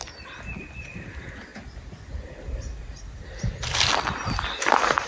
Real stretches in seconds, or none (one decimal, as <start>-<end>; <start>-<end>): 0.0-5.1